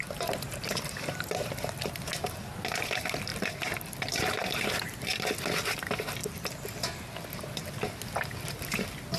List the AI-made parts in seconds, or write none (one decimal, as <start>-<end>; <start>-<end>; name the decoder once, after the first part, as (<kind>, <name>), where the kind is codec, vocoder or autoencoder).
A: 2.2-2.9 (vocoder, BigVGAN v2); 6.2-7.7